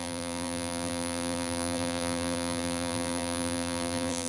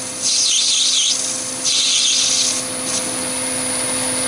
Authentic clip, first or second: second